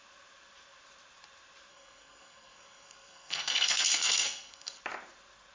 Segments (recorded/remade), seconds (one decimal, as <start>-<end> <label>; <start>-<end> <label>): 0.0-1.7 recorded; 1.7-4.8 remade; 4.8-5.5 recorded